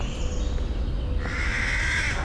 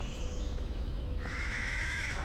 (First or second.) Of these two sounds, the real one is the first